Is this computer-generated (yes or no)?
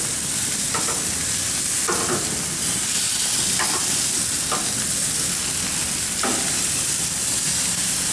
no